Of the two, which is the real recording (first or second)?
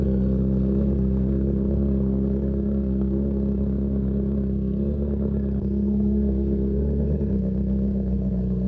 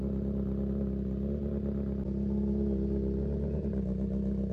second